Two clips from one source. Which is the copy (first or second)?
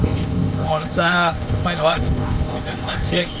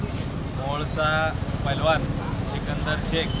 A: first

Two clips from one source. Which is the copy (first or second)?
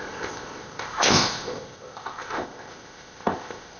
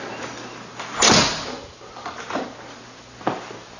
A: first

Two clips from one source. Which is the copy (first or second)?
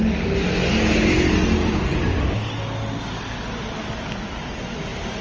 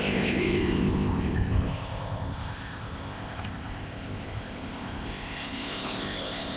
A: second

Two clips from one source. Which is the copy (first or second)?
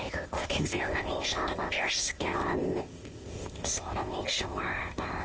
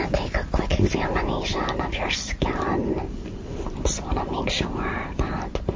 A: first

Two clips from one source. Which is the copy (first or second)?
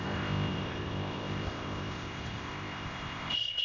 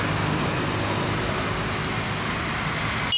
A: first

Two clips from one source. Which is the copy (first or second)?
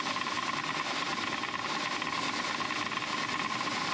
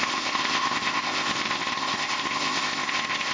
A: second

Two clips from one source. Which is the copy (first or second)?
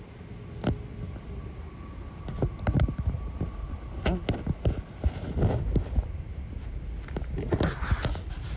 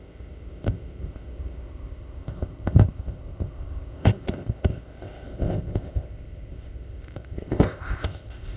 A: second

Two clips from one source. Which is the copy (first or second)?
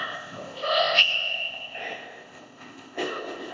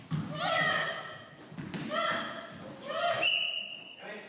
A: first